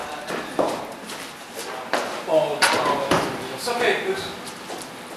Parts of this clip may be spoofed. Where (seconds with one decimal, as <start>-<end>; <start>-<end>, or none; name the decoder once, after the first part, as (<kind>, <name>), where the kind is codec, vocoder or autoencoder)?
2.5-3.8 (vocoder, BigVGAN v2)